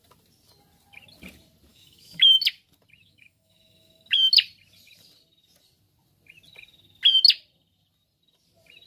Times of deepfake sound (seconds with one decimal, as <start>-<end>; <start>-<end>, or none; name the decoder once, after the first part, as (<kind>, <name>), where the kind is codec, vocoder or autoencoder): 1.7-2.4 (autoencoder, DAC-VAE); 3.0-4.2